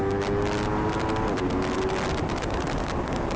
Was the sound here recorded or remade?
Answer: recorded